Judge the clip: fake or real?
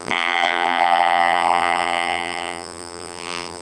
fake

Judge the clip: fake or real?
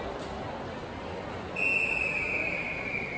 real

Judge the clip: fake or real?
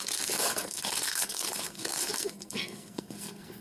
fake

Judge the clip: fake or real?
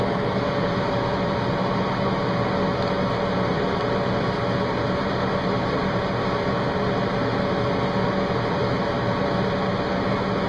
real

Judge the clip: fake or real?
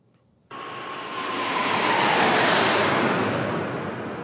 real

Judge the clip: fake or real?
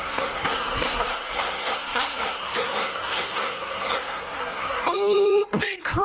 fake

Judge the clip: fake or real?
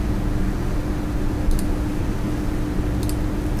real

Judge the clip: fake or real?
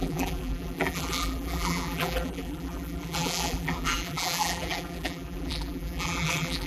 fake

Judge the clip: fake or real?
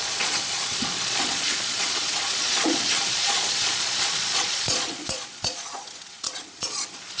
fake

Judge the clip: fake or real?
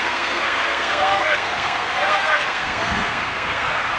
fake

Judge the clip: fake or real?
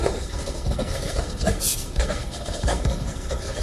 fake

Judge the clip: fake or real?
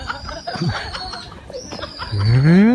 real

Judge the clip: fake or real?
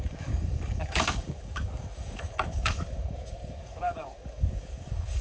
fake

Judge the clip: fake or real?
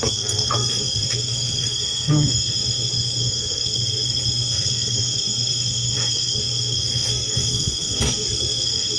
fake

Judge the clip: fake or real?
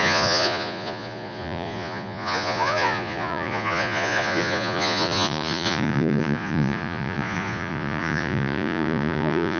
fake